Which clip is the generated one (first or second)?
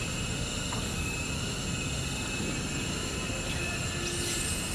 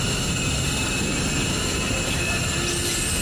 second